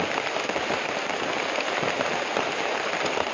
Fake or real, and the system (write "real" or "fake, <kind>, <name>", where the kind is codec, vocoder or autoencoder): real